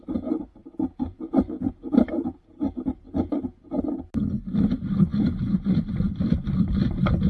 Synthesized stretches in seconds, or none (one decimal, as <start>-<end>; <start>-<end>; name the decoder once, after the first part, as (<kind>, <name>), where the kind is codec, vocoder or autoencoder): none